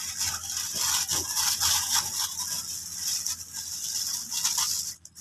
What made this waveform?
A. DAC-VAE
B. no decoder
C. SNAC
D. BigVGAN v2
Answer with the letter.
B